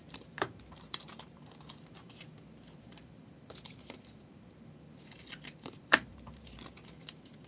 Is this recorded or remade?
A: remade